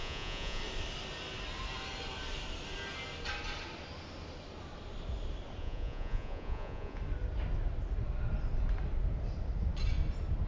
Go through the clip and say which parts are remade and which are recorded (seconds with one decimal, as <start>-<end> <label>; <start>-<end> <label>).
0.0-0.6 remade; 0.6-5.6 recorded; 5.6-7.0 remade; 7.0-10.5 recorded